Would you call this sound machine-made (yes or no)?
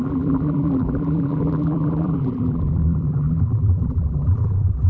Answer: yes